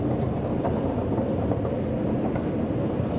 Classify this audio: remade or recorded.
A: recorded